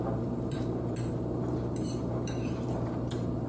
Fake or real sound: fake